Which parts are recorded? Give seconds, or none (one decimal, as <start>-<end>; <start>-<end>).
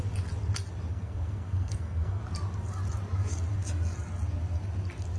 0.0-0.9; 2.2-5.2